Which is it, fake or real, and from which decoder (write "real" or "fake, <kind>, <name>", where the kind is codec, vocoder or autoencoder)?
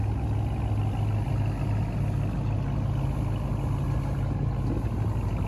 real